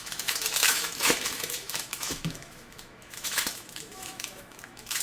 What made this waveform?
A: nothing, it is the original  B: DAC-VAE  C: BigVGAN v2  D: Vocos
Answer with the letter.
B